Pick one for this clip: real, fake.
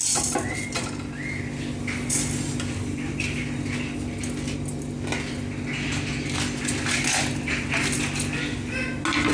real